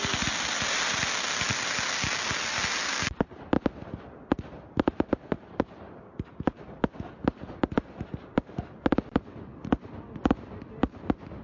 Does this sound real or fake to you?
real